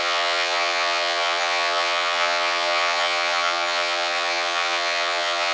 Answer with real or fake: fake